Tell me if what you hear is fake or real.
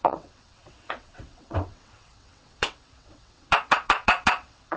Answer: fake